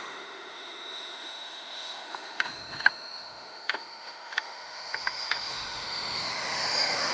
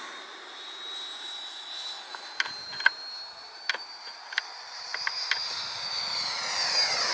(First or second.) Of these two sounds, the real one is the second